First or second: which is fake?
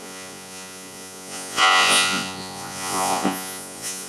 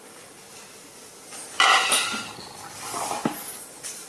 first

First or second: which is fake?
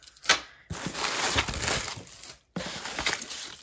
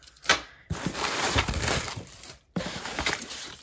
second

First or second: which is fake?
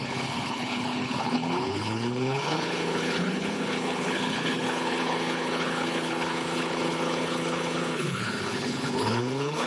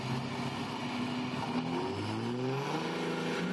first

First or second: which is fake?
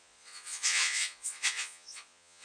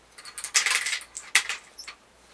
first